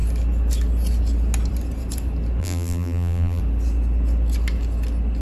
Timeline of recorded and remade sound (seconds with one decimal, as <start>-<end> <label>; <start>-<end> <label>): 0.0-2.4 recorded; 2.4-3.4 remade; 3.4-5.2 recorded